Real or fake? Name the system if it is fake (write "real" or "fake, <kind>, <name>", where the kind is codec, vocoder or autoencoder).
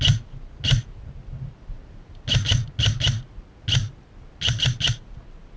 real